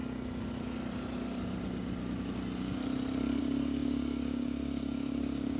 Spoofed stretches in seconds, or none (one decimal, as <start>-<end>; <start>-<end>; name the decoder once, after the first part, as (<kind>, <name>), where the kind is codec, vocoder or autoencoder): 3.4-5.6 (codec, DAC)